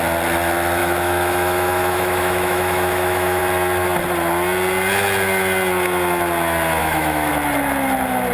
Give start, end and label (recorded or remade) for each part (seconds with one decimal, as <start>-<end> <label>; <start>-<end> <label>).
0.0-0.8 recorded; 0.8-3.4 remade; 3.4-6.8 recorded; 6.8-7.3 remade; 7.3-8.3 recorded